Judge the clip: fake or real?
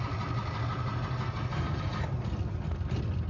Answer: real